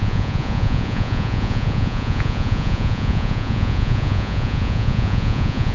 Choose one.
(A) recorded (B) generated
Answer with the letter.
B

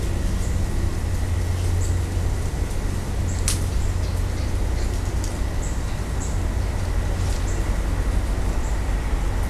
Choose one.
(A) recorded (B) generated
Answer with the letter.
A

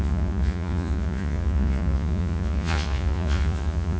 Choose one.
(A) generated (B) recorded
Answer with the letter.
A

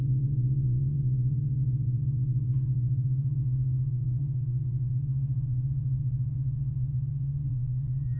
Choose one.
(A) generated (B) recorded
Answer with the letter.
A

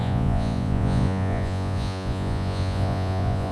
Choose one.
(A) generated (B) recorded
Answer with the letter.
A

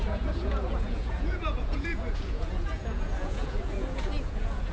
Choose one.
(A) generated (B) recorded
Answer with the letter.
A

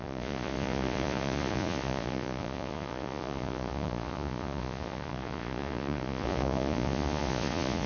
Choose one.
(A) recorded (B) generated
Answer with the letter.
B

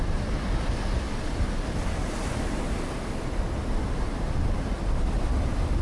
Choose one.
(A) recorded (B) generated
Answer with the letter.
A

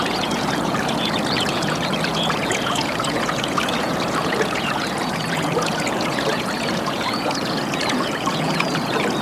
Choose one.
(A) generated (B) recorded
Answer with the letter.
A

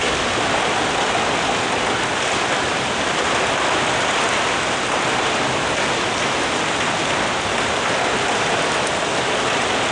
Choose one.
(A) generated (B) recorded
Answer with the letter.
B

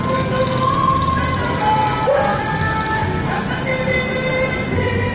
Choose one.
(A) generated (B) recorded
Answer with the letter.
B